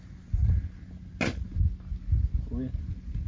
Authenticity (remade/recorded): recorded